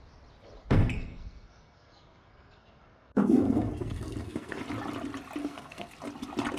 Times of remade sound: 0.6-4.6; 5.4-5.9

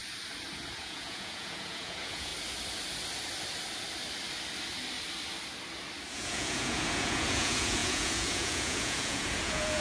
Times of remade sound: 0.8-2.3; 6.1-9.8

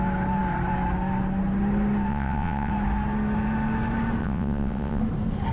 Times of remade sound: 2.1-2.7; 4.2-5.0

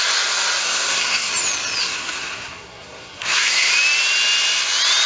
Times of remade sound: 0.6-1.3; 1.8-3.7

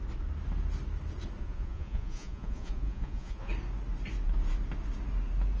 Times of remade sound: 1.4-3.5